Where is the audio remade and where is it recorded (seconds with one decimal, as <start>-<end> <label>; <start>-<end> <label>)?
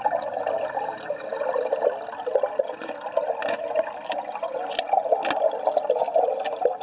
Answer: 0.0-6.8 recorded